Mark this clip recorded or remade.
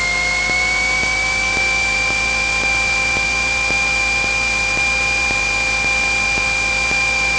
recorded